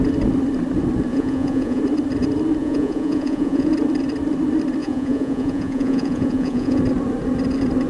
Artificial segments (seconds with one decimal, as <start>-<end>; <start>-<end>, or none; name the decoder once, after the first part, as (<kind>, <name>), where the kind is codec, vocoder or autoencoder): 1.1-1.8 (vocoder, Vocos); 2.6-3.7; 4.8-6.8